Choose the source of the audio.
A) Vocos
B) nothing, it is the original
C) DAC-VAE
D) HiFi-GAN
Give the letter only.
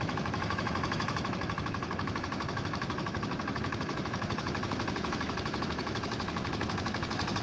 C